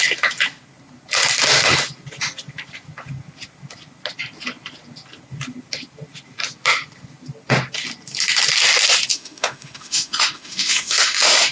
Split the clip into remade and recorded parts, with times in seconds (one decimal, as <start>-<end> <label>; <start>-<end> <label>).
0.0-9.1 recorded; 9.1-11.5 remade